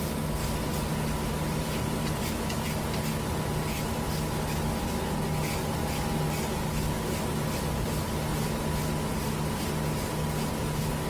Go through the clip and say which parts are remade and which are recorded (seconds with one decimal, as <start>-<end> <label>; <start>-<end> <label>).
0.0-11.1 recorded